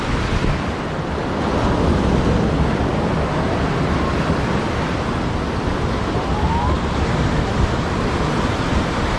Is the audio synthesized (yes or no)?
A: no